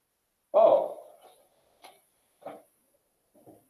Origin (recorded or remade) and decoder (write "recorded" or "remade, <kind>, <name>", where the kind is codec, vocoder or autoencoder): recorded